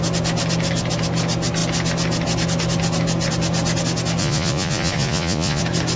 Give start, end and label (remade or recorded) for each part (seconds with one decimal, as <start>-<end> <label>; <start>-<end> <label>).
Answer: 0.0-4.2 recorded; 4.2-5.6 remade; 5.6-6.0 recorded